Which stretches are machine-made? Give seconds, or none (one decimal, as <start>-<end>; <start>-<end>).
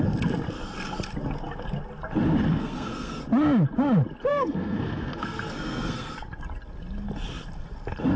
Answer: 2.5-3.2; 4.3-6.1